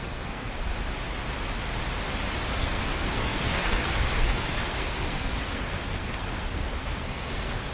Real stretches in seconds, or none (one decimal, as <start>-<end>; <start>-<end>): 0.7-2.6